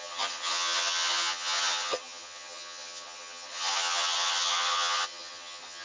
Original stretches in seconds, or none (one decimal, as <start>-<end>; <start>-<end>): none